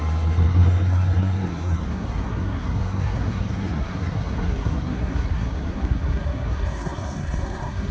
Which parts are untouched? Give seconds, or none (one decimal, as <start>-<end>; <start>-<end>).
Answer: none